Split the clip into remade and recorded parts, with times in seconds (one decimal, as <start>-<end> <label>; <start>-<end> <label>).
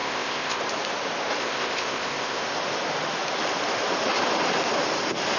0.0-0.6 remade; 0.6-1.4 recorded; 1.4-2.4 remade; 2.4-5.4 recorded